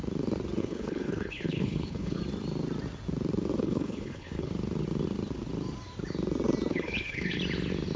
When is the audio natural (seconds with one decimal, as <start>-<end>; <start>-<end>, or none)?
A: 0.0-0.6; 2.2-3.6; 4.5-6.7; 7.4-8.0